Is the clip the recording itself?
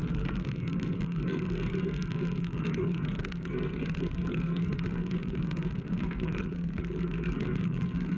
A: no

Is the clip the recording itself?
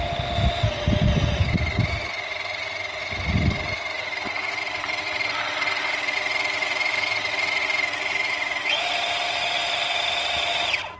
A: yes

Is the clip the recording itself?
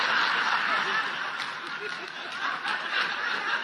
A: yes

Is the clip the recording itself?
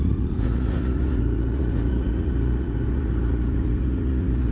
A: no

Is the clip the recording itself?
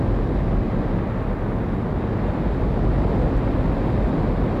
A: yes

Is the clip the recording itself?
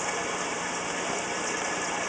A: yes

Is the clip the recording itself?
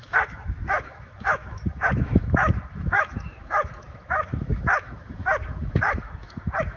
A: no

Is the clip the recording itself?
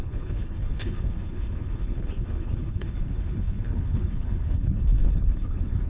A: no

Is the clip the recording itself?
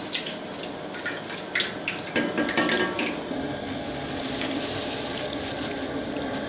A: yes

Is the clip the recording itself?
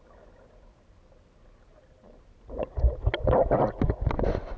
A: yes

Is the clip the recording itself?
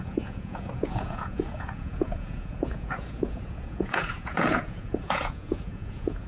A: no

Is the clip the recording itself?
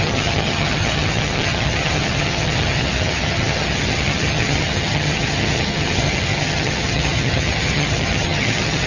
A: no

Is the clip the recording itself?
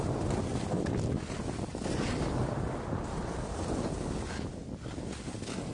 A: yes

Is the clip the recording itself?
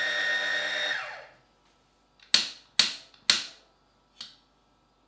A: yes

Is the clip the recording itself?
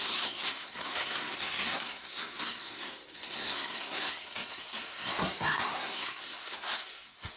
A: no